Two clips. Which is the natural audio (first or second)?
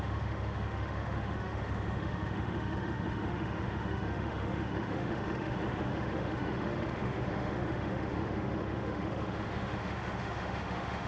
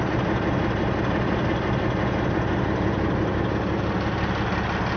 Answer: second